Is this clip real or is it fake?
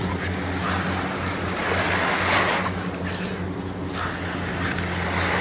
real